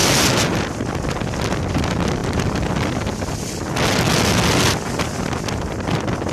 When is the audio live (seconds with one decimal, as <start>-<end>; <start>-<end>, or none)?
0.0-6.3